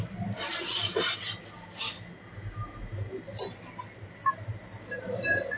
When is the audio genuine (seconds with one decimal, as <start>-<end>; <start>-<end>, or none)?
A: 0.0-5.6